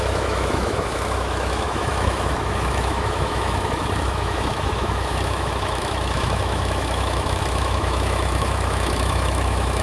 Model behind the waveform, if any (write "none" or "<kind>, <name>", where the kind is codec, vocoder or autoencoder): autoencoder, DAC-VAE